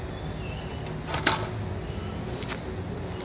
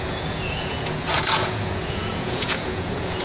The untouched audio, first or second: first